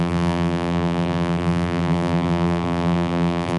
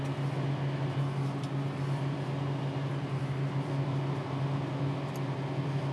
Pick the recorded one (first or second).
second